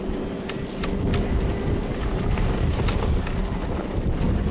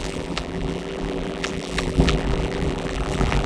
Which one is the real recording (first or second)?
first